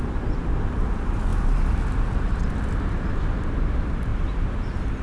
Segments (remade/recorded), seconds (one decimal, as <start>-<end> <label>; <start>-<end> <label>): 0.0-1.3 remade; 1.3-3.1 recorded; 3.1-4.1 remade; 4.1-5.0 recorded

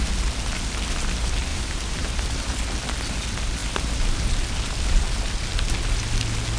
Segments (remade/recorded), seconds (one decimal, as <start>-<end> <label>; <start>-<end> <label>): 0.0-1.5 recorded; 1.5-2.2 remade; 2.2-6.6 recorded

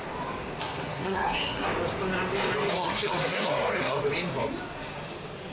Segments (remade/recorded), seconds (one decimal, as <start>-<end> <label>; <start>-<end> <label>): 0.0-0.6 recorded; 0.6-1.7 remade; 1.7-2.7 recorded; 2.7-4.0 remade; 4.0-5.5 recorded

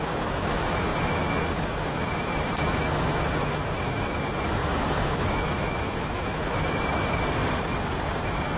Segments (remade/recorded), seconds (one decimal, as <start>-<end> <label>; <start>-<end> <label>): 0.0-7.4 remade; 7.4-8.0 recorded; 8.0-8.6 remade

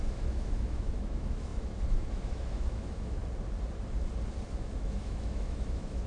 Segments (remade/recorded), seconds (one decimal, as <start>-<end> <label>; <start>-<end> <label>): 0.0-3.2 remade; 3.2-4.5 recorded; 4.5-6.1 remade

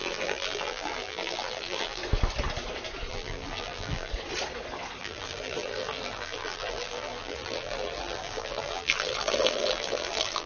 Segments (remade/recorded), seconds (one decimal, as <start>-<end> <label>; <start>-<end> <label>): 0.0-2.0 remade; 2.0-3.1 recorded; 3.1-4.1 remade; 4.1-5.0 recorded; 5.0-10.5 remade